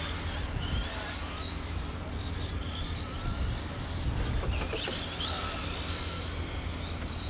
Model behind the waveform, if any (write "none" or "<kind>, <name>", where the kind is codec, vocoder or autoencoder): none